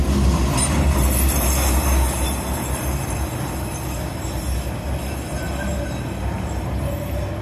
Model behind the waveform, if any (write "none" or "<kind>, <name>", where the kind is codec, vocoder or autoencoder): none